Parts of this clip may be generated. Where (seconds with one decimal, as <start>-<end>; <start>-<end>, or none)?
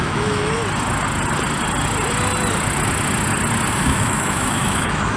0.0-0.6; 3.7-5.2